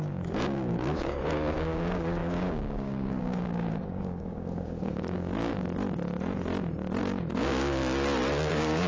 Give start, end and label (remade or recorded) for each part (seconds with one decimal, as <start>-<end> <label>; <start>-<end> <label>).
0.0-5.5 remade; 5.5-7.0 recorded; 7.0-7.8 remade; 7.8-8.5 recorded; 8.5-8.9 remade